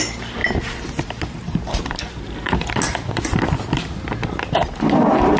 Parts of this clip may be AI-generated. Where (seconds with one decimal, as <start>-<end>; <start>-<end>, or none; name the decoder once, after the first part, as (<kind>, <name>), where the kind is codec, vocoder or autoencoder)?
none